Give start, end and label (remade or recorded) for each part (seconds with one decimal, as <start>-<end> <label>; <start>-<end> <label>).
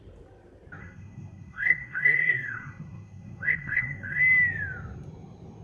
0.0-0.8 recorded; 0.8-4.2 remade; 4.2-5.6 recorded